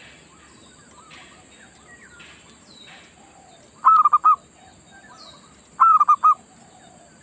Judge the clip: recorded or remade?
recorded